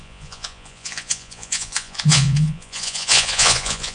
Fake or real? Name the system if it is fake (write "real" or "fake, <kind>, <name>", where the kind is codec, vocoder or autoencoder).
fake, vocoder, Vocos